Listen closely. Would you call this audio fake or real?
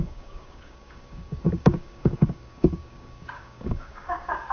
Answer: fake